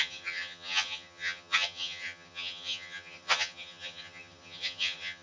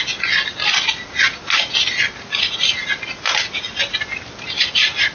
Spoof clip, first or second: first